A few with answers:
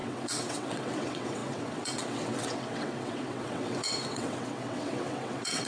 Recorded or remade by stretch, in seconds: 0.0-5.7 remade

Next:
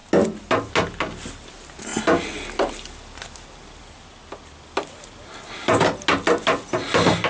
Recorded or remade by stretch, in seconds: 0.0-7.3 recorded